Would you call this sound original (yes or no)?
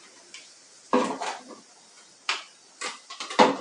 yes